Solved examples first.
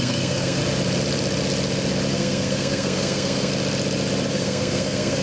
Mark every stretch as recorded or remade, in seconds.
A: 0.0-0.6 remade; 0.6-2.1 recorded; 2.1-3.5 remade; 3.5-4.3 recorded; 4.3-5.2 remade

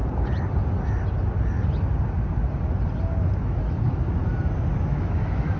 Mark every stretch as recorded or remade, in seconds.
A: 0.0-3.4 recorded; 3.4-4.2 remade; 4.2-4.9 recorded; 4.9-5.6 remade

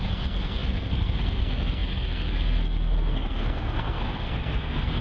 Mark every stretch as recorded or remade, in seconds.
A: 0.0-5.0 remade

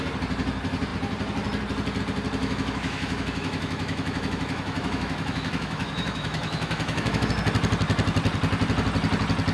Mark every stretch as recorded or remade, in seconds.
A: 0.0-2.4 recorded; 2.4-7.3 remade; 7.3-9.5 recorded

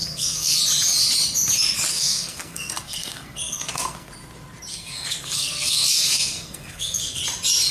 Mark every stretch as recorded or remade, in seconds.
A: 0.0-0.6 remade; 0.6-1.9 recorded; 1.9-4.1 remade; 4.1-4.7 recorded; 4.7-7.2 remade; 7.2-7.7 recorded

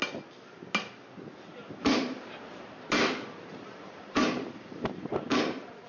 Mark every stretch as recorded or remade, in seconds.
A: 0.0-1.7 recorded; 1.7-5.9 remade